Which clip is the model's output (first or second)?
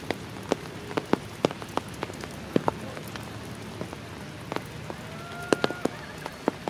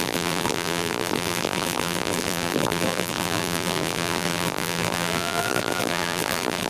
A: second